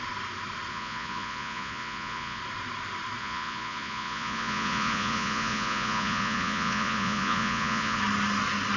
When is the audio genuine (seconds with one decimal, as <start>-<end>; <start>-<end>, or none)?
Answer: 0.0-0.7; 2.4-3.2; 8.0-8.8

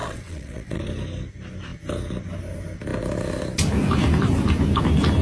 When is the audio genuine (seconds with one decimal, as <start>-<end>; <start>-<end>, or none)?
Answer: 0.8-5.2